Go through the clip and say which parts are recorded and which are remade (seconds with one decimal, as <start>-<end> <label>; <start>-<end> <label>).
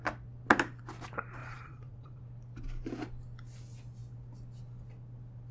0.0-1.4 recorded; 1.4-2.2 remade; 2.2-5.5 recorded